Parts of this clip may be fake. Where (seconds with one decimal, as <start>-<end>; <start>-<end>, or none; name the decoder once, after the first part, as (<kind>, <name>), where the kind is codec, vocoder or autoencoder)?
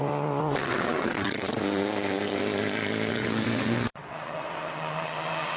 0.0-2.4 (vocoder, WaveNeXt); 3.1-5.6